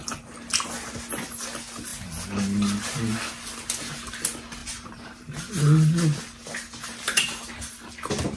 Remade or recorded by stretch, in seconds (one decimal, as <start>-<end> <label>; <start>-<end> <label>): 0.0-4.6 recorded; 4.6-5.5 remade; 5.5-8.4 recorded